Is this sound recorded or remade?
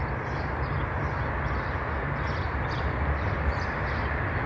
recorded